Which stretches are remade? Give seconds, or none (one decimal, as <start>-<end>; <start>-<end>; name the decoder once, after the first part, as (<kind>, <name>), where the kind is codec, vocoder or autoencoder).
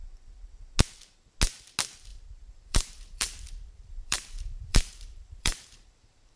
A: 2.1-5.9 (vocoder, BigVGAN v2)